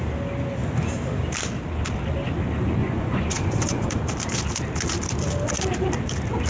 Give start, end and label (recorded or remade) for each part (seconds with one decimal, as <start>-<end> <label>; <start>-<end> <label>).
0.0-2.8 recorded; 2.8-3.9 remade; 3.9-6.5 recorded